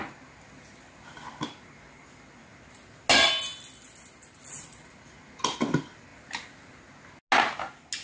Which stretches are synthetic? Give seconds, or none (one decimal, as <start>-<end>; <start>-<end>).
none